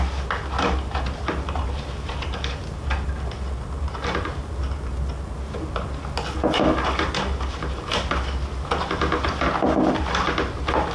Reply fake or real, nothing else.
real